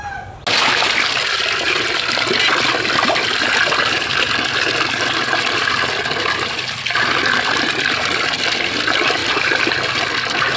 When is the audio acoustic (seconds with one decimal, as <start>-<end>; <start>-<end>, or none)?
0.0-9.2; 9.8-10.6